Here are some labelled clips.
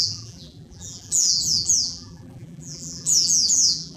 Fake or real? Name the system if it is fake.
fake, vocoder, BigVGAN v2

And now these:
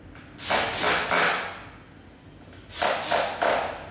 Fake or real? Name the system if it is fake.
real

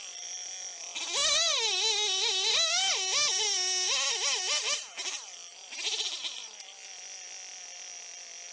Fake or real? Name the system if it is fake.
real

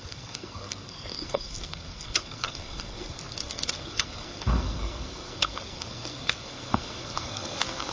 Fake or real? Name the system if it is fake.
fake, codec, SNAC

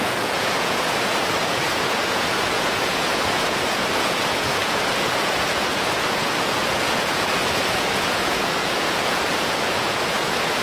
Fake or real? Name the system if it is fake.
fake, vocoder, Vocos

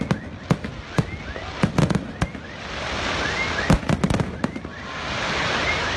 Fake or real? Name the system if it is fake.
real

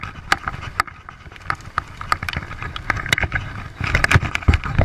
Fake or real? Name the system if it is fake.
real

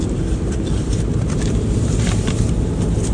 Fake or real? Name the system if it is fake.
fake, vocoder, BigVGAN v2